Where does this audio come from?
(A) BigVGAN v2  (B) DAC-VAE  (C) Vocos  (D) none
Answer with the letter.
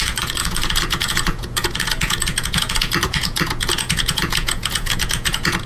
C